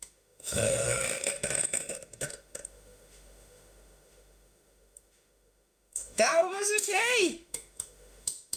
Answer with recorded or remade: remade